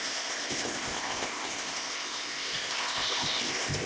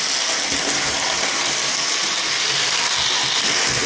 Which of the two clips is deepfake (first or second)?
first